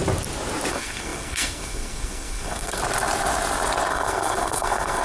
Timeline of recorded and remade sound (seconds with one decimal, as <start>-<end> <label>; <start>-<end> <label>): 0.0-0.7 recorded; 0.7-2.8 remade; 2.8-3.9 recorded; 3.9-5.0 remade